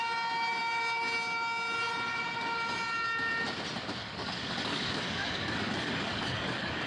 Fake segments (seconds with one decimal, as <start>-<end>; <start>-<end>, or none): 4.0-6.9